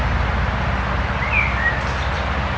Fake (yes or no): no